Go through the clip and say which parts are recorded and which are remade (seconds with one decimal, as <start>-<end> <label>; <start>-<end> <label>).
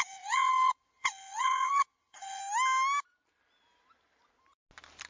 0.0-2.4 remade; 2.4-5.1 recorded